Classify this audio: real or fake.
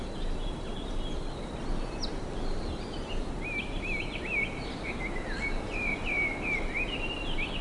real